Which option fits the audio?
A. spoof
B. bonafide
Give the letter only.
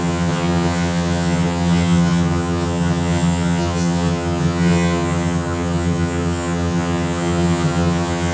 A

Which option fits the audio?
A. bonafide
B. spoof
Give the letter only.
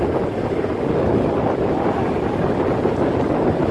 A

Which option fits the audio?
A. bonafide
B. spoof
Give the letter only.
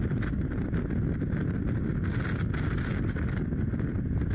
A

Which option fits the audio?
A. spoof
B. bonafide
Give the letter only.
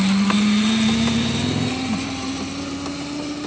B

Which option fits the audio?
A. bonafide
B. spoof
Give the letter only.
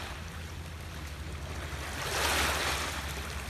A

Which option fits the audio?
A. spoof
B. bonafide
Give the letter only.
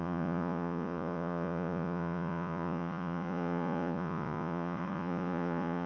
A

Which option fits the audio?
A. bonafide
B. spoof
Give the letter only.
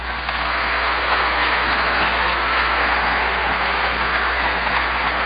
B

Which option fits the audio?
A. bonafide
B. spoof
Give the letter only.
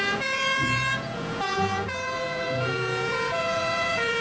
B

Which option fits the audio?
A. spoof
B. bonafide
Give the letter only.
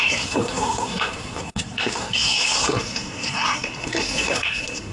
A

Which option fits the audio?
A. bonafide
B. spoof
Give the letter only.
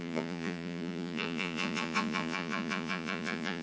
B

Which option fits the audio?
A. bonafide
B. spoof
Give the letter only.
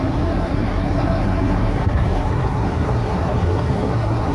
B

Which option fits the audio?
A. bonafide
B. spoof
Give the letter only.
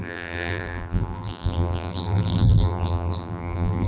B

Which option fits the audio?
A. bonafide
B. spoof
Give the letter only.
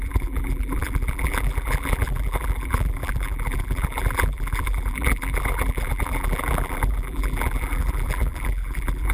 B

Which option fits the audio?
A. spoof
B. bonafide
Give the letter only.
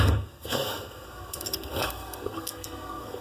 A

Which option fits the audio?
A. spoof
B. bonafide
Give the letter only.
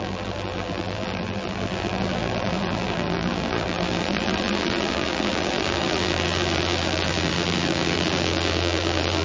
A